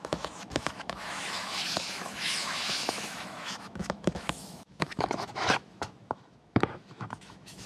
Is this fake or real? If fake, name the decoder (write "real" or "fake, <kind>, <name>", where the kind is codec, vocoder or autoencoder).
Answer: fake, autoencoder, DAC-VAE